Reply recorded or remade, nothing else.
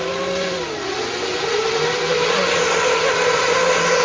recorded